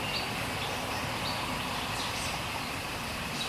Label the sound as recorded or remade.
recorded